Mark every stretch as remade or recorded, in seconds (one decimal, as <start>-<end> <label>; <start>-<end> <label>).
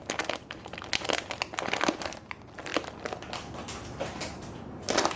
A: 0.0-5.2 recorded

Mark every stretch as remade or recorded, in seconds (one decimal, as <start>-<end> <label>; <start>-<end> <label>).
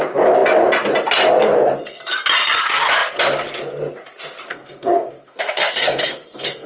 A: 0.0-4.5 recorded; 4.5-6.7 remade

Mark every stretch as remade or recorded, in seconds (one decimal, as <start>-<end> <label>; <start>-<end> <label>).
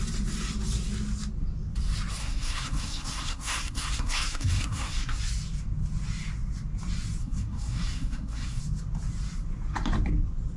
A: 0.0-2.2 recorded; 2.2-5.2 remade; 5.2-7.2 recorded; 7.2-8.6 remade; 8.6-10.6 recorded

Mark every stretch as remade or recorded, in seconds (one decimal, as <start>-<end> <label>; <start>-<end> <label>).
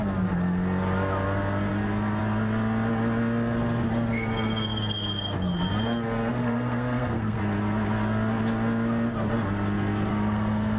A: 0.0-6.4 recorded; 6.4-7.4 remade; 7.4-10.1 recorded; 10.1-10.8 remade